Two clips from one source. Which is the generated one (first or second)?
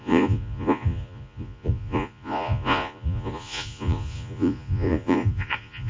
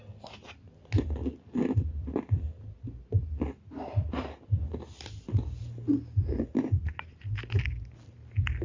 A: first